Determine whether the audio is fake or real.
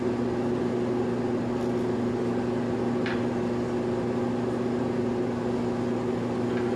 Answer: real